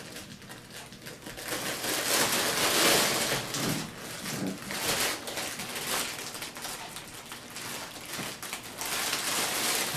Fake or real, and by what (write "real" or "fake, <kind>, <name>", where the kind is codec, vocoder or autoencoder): real